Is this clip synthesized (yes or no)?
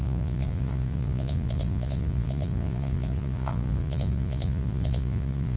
yes